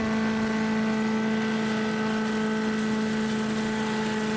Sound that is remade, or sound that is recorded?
recorded